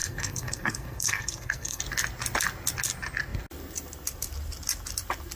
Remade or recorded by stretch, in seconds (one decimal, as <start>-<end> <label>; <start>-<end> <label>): 0.0-1.8 remade; 1.8-5.4 recorded